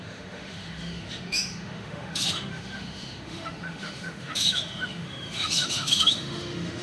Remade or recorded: remade